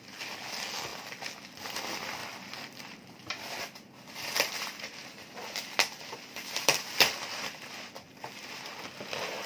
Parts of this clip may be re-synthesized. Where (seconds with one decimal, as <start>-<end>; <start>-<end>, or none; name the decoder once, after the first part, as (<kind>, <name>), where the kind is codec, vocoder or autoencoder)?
2.2-3.3 (vocoder, BigVGAN v2)